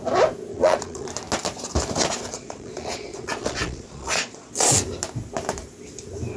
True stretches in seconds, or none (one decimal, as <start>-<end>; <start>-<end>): 0.0-0.5; 1.1-2.3; 4.8-6.4